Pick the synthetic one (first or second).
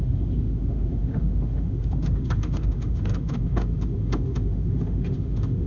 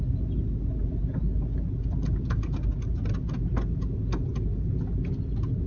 first